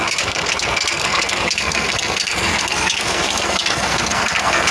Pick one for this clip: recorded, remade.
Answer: remade